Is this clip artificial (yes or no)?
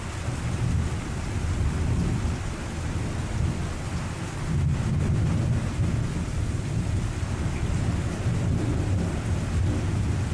no